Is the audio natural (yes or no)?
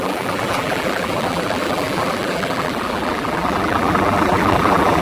no